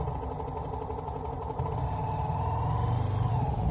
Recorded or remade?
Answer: recorded